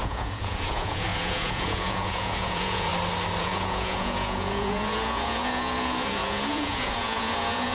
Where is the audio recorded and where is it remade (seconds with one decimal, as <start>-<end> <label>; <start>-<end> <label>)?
0.0-2.9 remade; 2.9-3.4 recorded; 3.4-7.7 remade

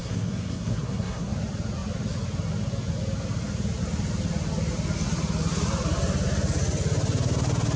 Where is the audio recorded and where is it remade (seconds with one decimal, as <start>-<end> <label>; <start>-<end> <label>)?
0.0-1.3 remade; 1.3-7.8 recorded

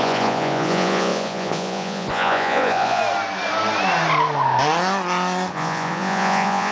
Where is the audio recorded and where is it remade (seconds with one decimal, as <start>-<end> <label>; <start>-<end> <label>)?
0.0-3.0 remade; 3.0-5.5 recorded; 5.5-6.7 remade

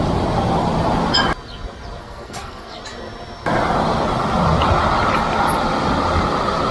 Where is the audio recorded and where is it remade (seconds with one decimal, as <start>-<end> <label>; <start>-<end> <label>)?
0.0-2.0 recorded; 2.0-2.8 remade; 2.8-6.7 recorded

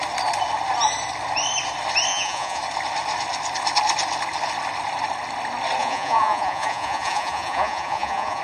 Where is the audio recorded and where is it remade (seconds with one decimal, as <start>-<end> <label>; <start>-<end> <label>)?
0.0-2.1 recorded; 2.1-2.6 remade; 2.6-5.8 recorded; 5.8-8.4 remade